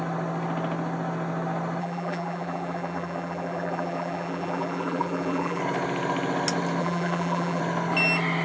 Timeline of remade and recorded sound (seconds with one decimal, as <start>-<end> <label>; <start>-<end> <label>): 0.0-1.8 recorded; 1.8-5.6 remade; 5.6-6.8 recorded; 6.8-7.6 remade; 7.6-8.4 recorded